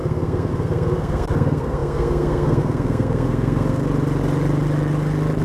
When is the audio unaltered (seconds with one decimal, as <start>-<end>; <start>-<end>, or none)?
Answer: 3.8-5.4